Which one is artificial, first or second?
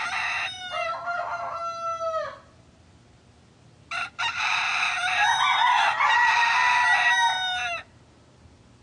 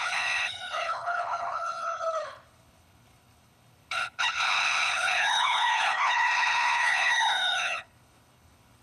second